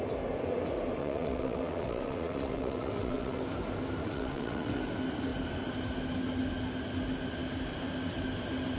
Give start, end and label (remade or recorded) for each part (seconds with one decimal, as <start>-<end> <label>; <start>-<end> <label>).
0.0-1.0 recorded; 1.0-3.4 remade; 3.4-4.0 recorded; 4.0-4.8 remade; 4.8-8.8 recorded